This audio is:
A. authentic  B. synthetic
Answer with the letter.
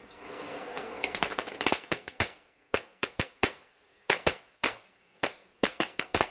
B